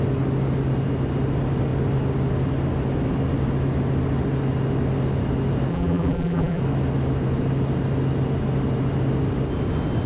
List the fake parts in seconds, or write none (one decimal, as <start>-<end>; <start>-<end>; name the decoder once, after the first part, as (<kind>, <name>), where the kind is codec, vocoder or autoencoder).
5.7-6.6 (vocoder, BigVGAN v2)